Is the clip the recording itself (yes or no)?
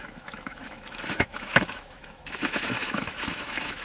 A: no